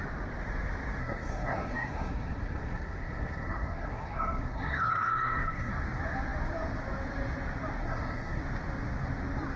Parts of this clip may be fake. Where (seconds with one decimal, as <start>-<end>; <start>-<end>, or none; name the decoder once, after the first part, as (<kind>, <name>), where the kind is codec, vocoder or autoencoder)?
1.0-5.7 (codec, SNAC); 7.8-8.4